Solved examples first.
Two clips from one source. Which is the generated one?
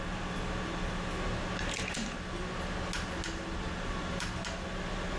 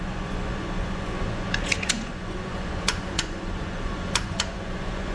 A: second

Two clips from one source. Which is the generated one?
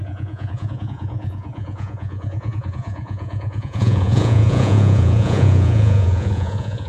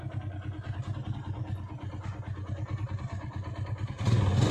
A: first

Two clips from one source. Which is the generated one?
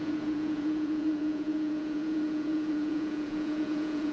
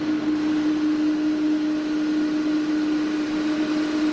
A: first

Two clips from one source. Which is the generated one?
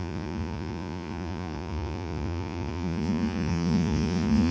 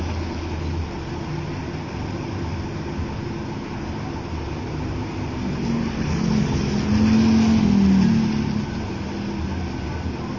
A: first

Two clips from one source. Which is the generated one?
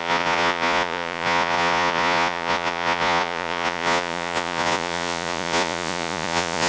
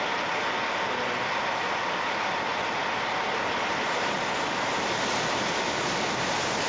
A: first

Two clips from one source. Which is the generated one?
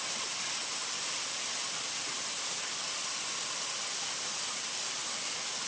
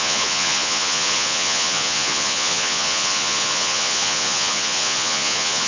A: second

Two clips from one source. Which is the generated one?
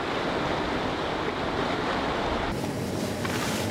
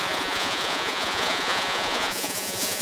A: second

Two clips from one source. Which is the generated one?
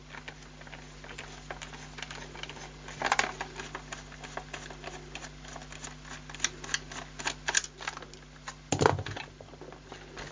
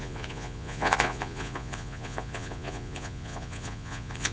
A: second